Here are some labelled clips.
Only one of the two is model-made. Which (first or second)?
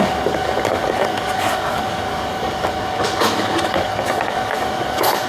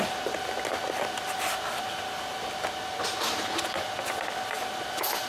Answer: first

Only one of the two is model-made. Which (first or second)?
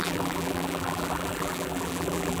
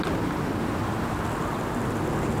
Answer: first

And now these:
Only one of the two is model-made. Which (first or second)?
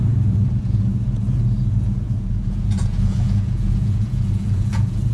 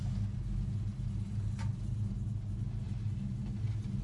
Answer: first